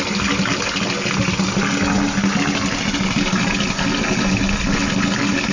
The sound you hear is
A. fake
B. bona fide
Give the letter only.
B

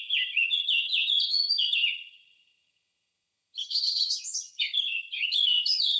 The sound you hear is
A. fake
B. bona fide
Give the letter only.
A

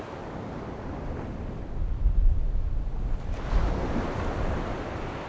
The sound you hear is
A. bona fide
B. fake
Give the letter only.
A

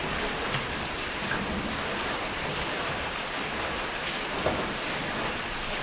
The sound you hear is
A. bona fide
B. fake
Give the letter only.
A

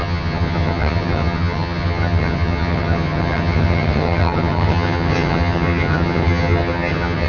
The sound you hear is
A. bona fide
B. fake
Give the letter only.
B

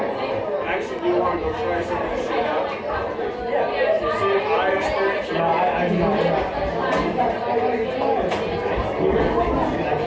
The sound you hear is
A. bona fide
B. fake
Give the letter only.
A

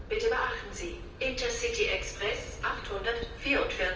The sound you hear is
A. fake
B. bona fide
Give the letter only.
B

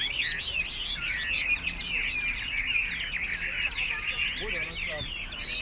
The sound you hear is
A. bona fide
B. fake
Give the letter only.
A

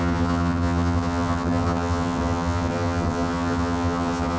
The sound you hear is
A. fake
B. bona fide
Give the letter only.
A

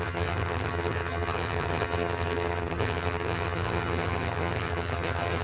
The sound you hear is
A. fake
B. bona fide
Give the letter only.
A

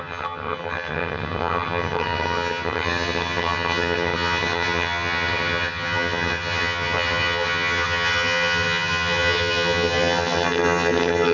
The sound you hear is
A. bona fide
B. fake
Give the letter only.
B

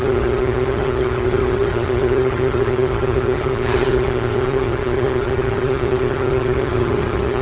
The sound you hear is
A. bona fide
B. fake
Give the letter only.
B